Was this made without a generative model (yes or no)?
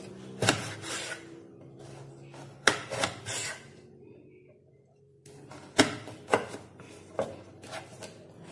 yes